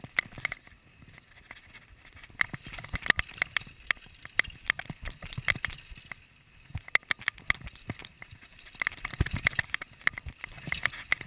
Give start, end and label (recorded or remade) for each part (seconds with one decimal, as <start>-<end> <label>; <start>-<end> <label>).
0.0-11.3 recorded